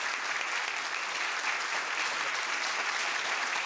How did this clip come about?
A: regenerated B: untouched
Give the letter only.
B